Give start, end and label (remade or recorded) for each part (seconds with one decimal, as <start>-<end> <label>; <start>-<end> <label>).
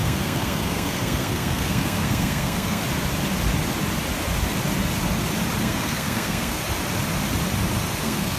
0.0-2.8 remade; 2.8-5.6 recorded; 5.6-6.6 remade; 6.6-8.0 recorded; 8.0-8.4 remade